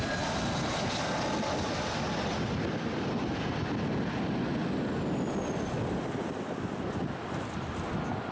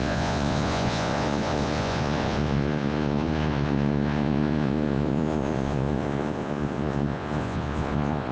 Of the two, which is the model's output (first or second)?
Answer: second